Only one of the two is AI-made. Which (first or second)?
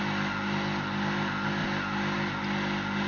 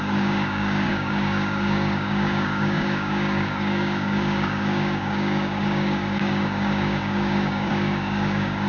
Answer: second